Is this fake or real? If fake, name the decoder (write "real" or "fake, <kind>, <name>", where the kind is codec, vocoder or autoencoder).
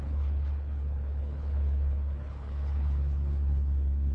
fake, codec, HILCodec